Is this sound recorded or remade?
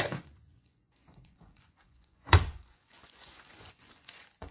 remade